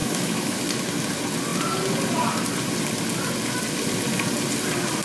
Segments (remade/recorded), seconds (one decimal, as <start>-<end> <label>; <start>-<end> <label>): 0.0-0.6 remade; 0.6-5.0 recorded